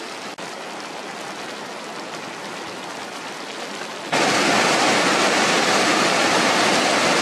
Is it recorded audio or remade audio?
recorded